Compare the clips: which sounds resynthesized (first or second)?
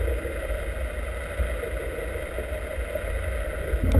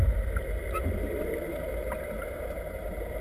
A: second